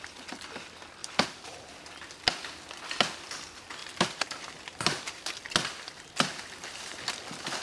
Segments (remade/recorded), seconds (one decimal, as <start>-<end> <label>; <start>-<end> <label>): 0.0-1.0 recorded; 1.0-1.6 remade; 1.6-3.8 recorded; 3.8-5.2 remade; 5.2-7.6 recorded